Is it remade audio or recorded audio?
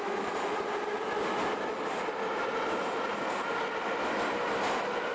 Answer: recorded